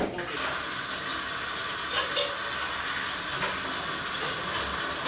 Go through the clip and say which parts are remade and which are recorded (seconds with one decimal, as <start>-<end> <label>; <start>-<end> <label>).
0.0-5.1 recorded

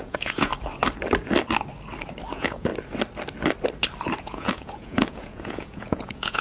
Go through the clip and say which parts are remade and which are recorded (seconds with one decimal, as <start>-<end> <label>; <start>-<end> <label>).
0.0-0.5 remade; 0.5-2.3 recorded; 2.3-2.7 remade; 2.7-4.2 recorded; 4.2-6.4 remade

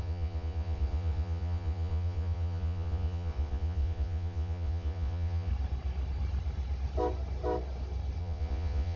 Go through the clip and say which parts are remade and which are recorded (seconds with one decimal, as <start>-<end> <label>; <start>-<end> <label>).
0.0-5.5 remade; 5.5-8.2 recorded; 8.2-9.0 remade

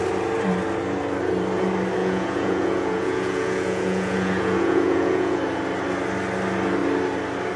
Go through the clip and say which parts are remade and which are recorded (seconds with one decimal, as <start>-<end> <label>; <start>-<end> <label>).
0.0-2.0 recorded; 2.0-5.4 remade; 5.4-7.6 recorded

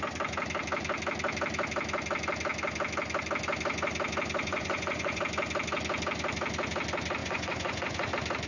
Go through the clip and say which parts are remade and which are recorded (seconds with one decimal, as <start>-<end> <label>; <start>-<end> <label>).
0.0-4.5 recorded; 4.5-5.2 remade; 5.2-7.2 recorded; 7.2-8.1 remade; 8.1-8.5 recorded

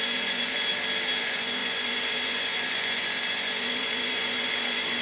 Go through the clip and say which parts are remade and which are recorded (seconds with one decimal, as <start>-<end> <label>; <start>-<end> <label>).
0.0-0.7 remade; 0.7-1.2 recorded; 1.2-5.0 remade